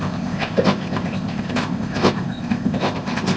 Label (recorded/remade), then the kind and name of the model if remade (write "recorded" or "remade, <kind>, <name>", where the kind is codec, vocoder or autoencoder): remade, codec, ZipCodec